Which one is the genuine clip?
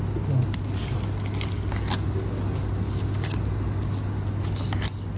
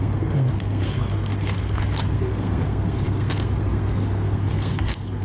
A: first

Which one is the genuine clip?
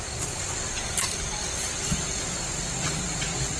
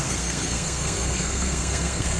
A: first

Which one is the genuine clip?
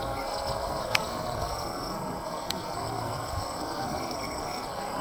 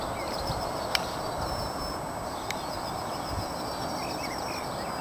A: second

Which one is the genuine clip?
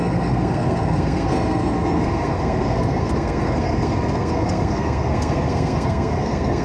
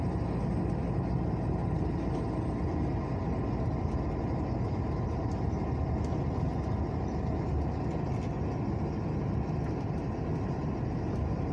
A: second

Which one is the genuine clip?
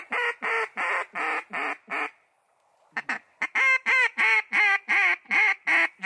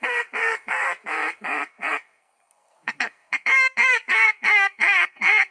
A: first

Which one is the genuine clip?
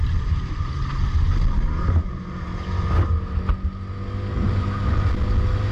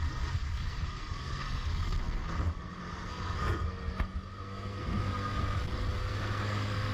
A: first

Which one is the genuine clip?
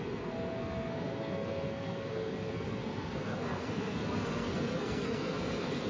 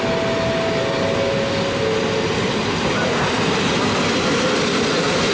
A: second